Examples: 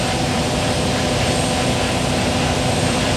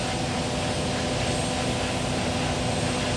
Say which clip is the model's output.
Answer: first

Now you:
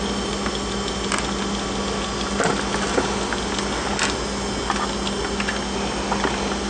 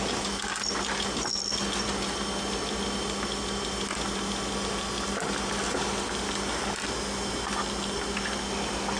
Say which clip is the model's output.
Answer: second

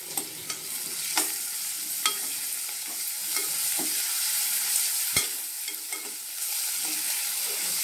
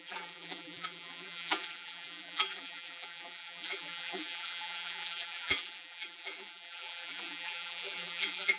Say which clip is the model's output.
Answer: second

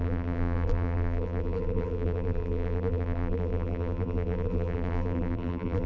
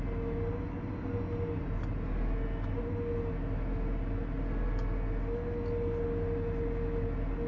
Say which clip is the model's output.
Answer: first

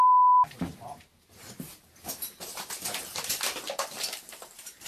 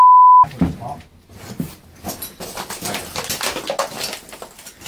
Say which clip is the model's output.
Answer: first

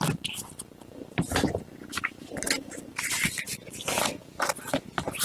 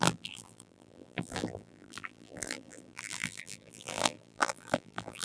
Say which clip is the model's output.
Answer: second